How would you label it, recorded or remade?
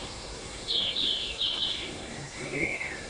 remade